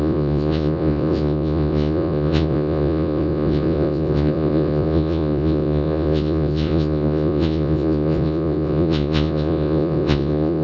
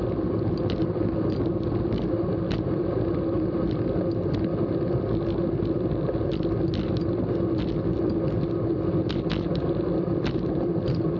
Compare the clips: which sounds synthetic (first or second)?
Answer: first